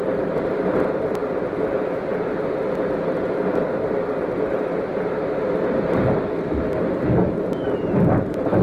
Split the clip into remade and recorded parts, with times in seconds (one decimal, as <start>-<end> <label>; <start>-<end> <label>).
0.0-0.6 remade; 0.6-8.6 recorded